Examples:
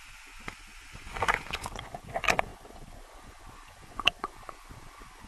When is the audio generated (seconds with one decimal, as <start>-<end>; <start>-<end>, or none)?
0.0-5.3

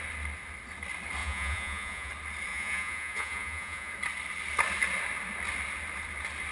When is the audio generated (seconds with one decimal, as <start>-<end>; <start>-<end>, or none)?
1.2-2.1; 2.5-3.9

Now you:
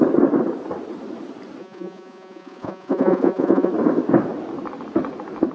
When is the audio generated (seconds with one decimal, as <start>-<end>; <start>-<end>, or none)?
1.6-3.7